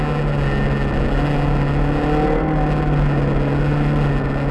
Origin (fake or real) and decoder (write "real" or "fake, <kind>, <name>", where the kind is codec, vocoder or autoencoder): real